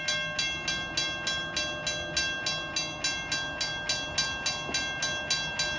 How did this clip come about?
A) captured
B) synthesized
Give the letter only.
A